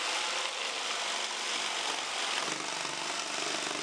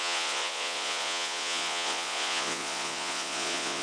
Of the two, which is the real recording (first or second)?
first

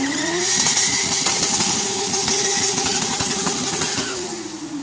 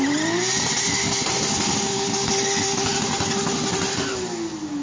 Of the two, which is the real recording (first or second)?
second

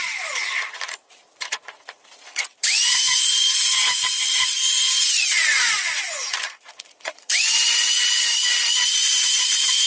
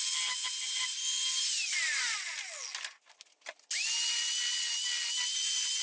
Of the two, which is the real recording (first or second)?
second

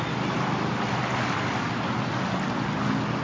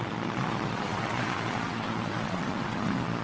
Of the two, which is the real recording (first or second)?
first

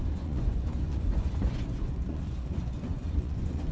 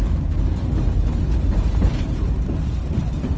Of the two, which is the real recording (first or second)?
second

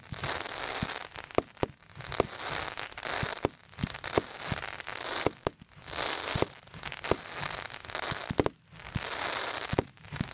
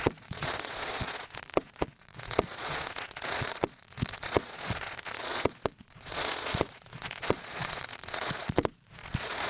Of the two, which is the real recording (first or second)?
first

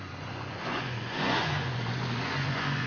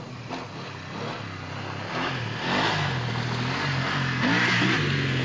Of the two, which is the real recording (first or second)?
second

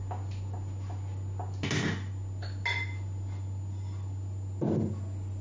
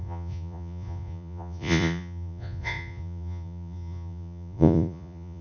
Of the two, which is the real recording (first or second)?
first